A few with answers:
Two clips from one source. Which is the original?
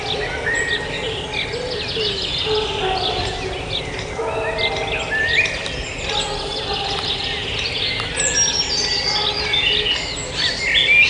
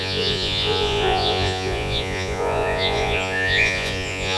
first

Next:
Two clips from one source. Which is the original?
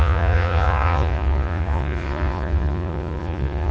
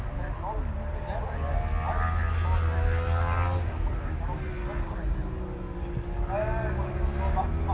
second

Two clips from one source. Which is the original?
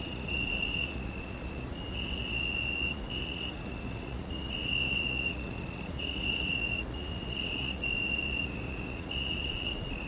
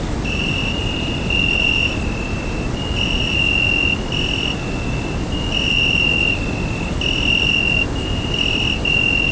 second